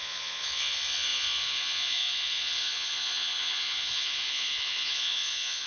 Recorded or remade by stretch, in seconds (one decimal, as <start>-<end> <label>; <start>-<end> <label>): 0.0-5.7 remade